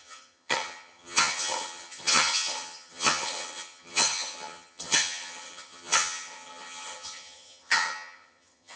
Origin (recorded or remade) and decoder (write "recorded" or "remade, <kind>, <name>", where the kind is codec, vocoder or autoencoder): remade, vocoder, HiFi-GAN